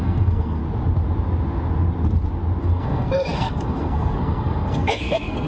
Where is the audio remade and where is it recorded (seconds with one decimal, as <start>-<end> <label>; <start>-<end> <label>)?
0.0-0.6 remade; 0.6-2.6 recorded; 2.6-5.5 remade